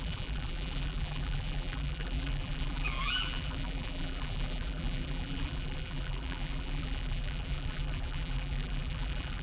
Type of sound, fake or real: fake